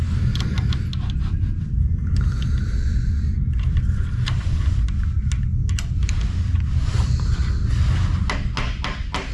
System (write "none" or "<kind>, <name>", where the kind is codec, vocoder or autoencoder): none